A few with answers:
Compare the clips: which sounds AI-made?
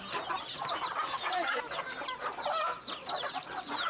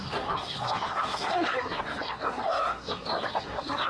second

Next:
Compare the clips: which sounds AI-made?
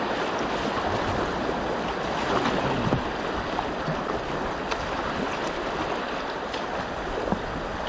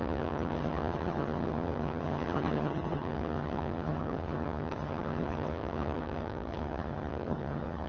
second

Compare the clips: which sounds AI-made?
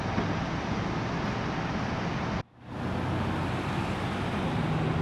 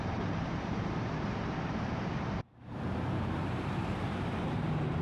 second